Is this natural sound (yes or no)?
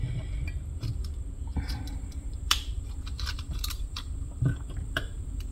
no